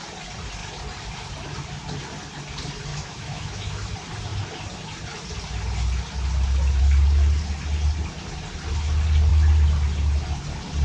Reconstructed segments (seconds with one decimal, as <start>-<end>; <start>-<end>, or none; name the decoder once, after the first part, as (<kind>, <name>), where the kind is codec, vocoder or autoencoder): 2.9-3.9 (autoencoder, DAC-VAE)